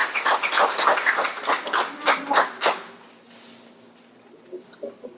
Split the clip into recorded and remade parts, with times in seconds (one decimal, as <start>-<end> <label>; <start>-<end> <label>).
0.0-5.2 recorded